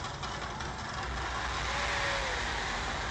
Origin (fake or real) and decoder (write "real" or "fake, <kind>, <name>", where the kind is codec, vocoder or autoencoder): real